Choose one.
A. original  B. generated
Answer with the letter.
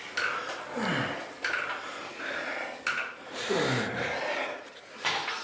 A